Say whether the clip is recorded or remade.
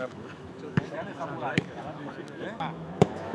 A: remade